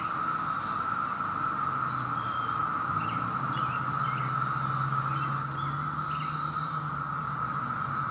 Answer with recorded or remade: recorded